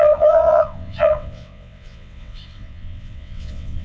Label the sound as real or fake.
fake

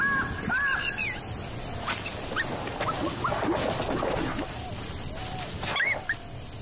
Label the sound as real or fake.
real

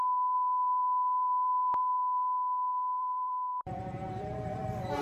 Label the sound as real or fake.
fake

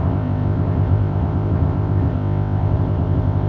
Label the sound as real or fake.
fake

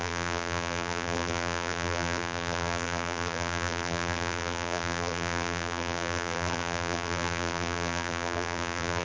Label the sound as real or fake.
fake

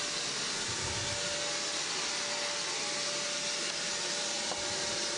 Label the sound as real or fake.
real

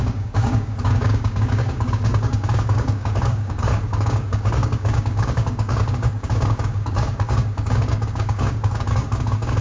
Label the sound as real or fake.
fake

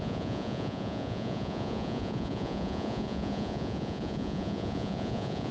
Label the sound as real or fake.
fake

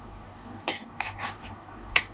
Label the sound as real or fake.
fake